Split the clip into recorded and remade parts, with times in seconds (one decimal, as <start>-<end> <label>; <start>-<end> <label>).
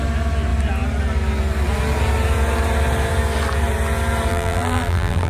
0.0-4.3 recorded; 4.3-5.3 remade